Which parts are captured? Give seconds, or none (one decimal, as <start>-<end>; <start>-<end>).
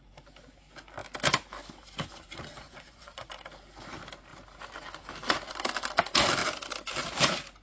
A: 0.0-2.5; 3.3-7.6